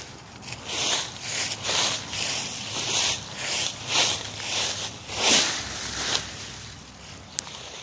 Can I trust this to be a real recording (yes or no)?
yes